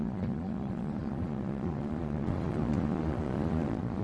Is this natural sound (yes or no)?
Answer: no